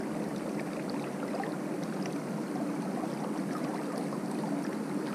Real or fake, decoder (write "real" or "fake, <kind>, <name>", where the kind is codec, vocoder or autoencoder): real